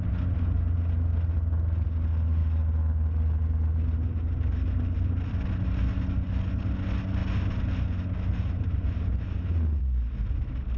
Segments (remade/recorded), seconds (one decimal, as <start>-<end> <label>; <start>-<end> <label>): 0.0-10.8 recorded